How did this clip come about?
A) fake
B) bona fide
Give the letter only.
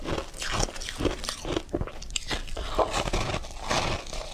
B